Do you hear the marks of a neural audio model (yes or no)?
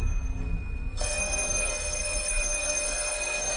yes